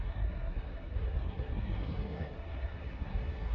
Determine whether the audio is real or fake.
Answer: fake